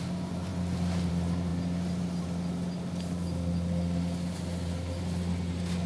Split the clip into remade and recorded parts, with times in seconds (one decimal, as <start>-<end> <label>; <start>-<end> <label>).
0.0-5.9 recorded